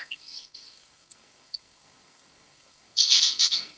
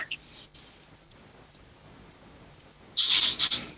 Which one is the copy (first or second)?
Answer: first